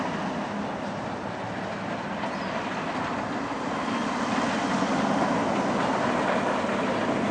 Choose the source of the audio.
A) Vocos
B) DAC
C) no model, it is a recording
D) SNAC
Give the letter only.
C